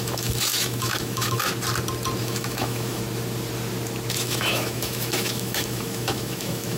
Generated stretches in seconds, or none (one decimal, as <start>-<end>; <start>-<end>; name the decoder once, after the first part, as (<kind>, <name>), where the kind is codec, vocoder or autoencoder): 0.0-1.5 (autoencoder, DAC-VAE); 2.2-3.0; 4.1-6.8